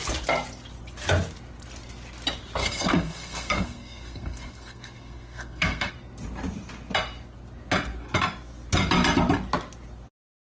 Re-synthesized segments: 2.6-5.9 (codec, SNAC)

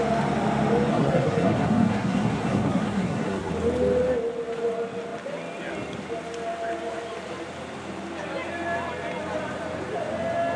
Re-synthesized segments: 0.9-3.5 (codec, SNAC)

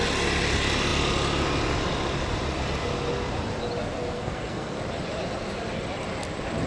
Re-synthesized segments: 4.0-4.8 (codec, SNAC)

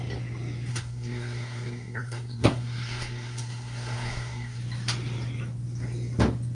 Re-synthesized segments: 0.7-4.6 (codec, SNAC)